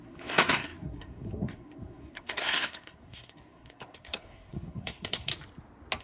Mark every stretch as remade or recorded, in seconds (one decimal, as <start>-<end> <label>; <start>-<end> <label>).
0.0-5.3 remade; 5.3-6.0 recorded